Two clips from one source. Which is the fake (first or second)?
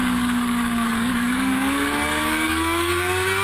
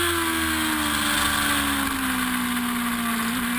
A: first